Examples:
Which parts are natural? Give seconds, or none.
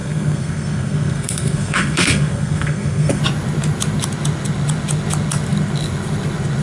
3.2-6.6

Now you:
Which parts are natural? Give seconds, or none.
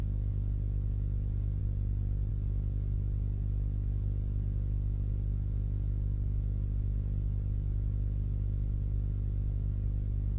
0.0-10.4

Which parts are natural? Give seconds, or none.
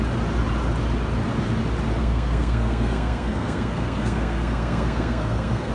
0.0-2.0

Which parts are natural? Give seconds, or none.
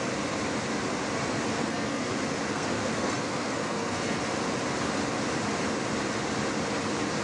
0.0-1.6; 2.1-2.5; 4.2-7.2